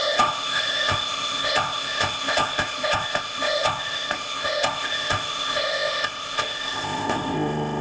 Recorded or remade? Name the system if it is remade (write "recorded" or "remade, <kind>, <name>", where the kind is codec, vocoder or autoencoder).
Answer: remade, codec, ZipCodec